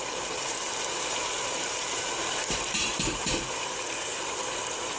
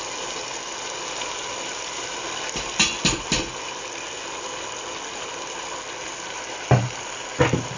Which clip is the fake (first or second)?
first